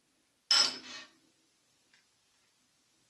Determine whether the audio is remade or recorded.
recorded